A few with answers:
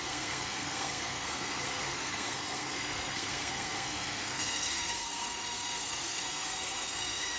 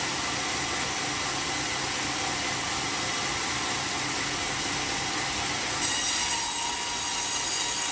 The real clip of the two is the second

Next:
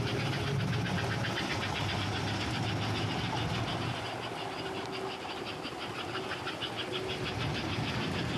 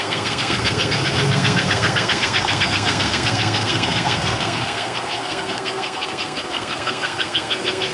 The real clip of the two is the first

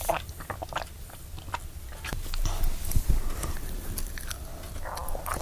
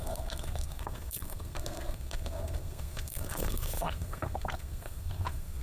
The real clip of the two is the first